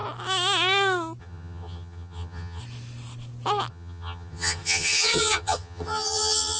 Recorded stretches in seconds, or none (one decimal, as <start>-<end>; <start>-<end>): 0.0-1.2; 2.6-3.7